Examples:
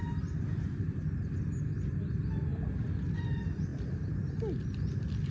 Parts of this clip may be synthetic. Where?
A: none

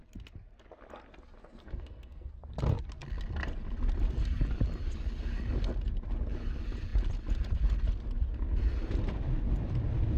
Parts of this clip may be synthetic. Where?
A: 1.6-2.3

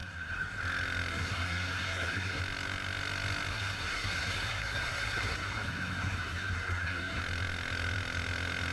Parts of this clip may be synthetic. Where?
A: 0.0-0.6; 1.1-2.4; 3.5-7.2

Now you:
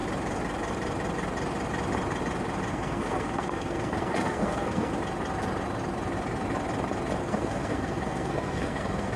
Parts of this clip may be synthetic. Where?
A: 2.7-4.9; 7.2-9.2